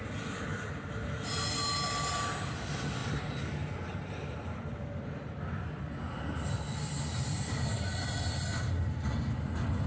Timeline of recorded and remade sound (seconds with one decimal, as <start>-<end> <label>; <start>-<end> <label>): 0.0-9.9 recorded